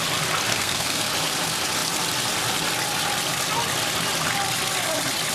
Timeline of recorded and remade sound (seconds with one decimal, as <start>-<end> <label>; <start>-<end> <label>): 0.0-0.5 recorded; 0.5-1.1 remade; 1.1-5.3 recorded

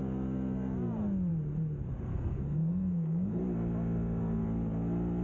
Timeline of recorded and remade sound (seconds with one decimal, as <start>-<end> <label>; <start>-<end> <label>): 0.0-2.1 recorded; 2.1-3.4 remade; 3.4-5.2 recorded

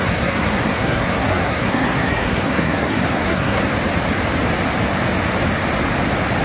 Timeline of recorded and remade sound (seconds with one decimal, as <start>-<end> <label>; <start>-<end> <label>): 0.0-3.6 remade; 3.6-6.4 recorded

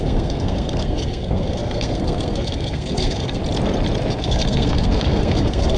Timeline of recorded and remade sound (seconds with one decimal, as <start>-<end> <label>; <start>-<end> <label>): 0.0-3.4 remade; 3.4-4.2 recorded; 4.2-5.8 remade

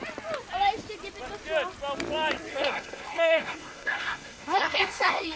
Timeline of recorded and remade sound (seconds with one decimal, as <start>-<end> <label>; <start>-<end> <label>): 0.0-2.5 recorded; 2.5-5.4 remade